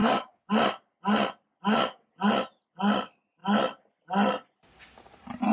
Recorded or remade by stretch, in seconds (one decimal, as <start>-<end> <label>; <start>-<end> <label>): 0.0-0.5 remade; 0.5-5.5 recorded

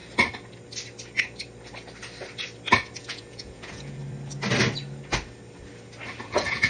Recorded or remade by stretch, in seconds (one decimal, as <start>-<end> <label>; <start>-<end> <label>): 0.0-3.0 recorded; 3.0-4.0 remade; 4.0-6.2 recorded; 6.2-6.7 remade

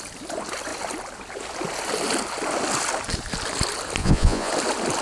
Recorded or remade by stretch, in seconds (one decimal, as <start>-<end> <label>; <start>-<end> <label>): 0.0-4.0 recorded; 4.0-4.5 remade; 4.5-5.0 recorded

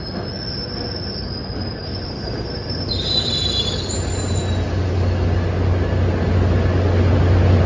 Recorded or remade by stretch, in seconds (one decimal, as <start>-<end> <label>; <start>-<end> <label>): 0.0-7.7 recorded